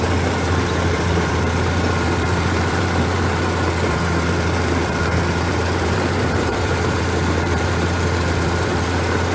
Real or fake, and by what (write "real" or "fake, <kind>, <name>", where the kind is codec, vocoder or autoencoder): fake, vocoder, BigVGAN v2